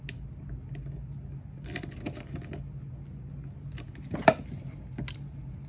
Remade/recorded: recorded